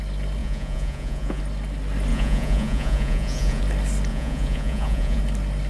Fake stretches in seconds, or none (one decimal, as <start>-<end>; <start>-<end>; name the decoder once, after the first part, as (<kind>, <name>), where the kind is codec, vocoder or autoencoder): 0.4-1.4 (vocoder, Vocos); 2.1-3.6; 4.1-5.2